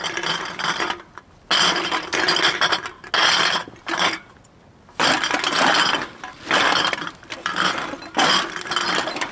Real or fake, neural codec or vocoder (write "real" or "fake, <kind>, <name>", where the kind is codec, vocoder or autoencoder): real